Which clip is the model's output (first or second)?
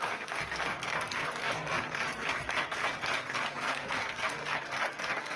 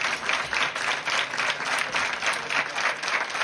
first